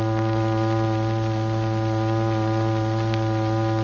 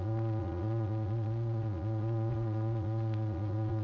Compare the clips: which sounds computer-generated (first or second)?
second